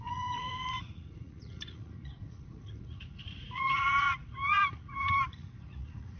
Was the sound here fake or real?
fake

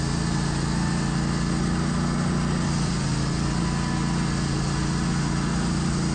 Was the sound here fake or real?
real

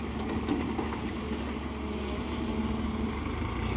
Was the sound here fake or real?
real